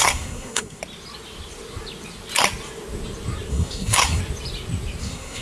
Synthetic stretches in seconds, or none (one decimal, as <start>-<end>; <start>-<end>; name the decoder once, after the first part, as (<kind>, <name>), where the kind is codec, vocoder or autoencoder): 0.0-0.8 (codec, SNAC); 3.5-4.2; 5.0-5.4